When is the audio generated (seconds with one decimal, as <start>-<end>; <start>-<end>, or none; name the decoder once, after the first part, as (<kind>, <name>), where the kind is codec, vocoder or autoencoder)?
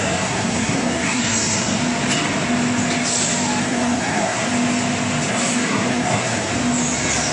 0.0-1.8 (codec, SNAC); 3.6-4.5; 5.3-6.5